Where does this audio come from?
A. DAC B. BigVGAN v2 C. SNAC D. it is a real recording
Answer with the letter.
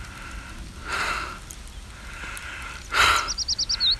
D